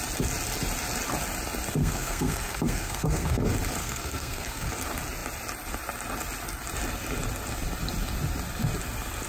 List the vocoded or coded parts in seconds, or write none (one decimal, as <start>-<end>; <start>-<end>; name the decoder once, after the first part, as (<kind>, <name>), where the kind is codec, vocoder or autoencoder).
1.8-3.4 (codec, SNAC); 3.8-4.7